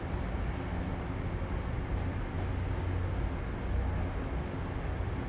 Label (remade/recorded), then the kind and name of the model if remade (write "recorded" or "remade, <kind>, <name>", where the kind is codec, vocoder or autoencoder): recorded